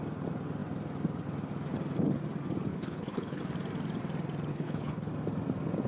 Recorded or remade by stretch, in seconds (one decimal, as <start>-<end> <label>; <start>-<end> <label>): 0.0-2.7 recorded; 2.7-3.4 remade; 3.4-4.5 recorded; 4.5-5.1 remade; 5.1-5.9 recorded